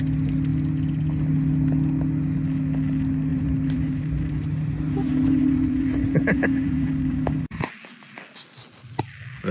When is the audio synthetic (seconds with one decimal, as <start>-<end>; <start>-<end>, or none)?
3.3-7.7